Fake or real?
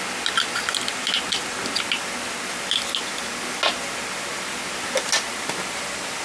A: real